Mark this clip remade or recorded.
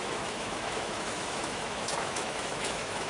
remade